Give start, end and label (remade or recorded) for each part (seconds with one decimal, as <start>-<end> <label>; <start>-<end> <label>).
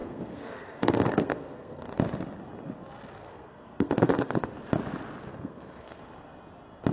0.0-1.8 remade; 1.8-3.2 recorded; 3.2-4.4 remade; 4.4-5.3 recorded; 5.3-6.0 remade; 6.0-6.9 recorded